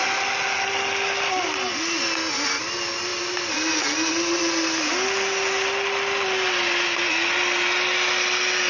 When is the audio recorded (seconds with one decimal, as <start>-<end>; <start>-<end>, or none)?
0.0-8.7